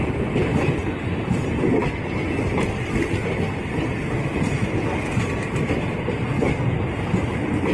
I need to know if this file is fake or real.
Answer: real